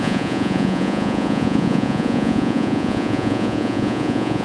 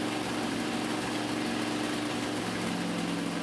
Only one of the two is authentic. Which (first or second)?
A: second